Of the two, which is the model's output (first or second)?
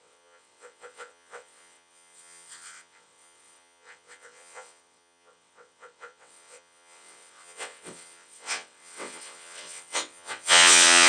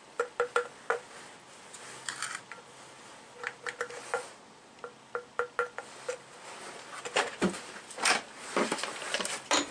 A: first